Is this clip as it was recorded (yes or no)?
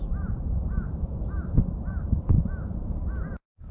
no